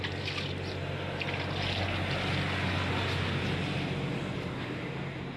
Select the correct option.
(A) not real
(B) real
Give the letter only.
B